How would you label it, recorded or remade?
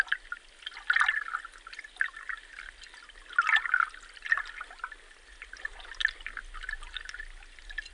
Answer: recorded